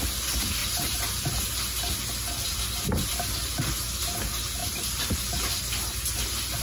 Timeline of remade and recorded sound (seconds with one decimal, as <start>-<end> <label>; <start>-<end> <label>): 0.0-0.6 recorded; 0.6-1.4 remade; 1.4-4.6 recorded; 4.6-5.6 remade; 5.6-6.6 recorded